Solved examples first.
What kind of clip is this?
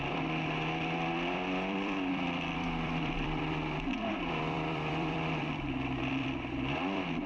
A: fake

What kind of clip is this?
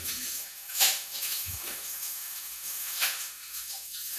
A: fake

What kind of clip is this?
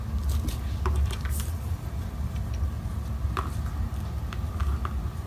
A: real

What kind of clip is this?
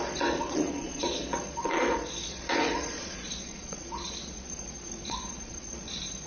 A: fake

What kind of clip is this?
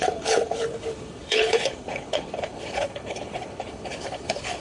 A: fake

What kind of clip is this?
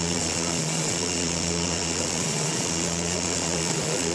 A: fake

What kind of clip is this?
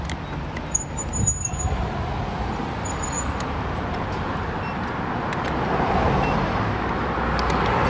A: real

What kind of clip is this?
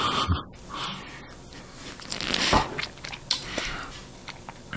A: real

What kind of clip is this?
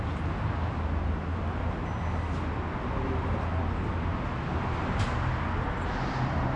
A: real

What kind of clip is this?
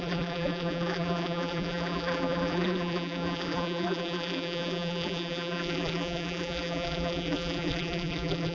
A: fake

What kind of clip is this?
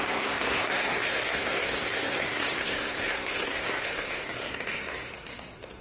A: fake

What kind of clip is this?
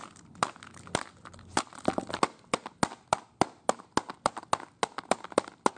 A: real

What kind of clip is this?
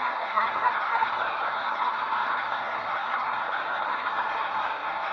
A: fake